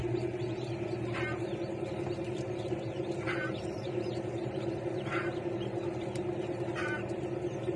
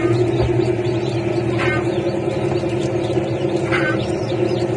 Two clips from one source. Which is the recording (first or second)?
second